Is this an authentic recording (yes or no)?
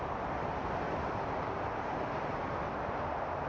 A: yes